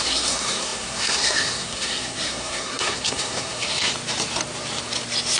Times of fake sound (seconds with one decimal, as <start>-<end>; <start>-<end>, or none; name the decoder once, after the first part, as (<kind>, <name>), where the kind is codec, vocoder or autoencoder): 0.0-3.9 (codec, SNAC)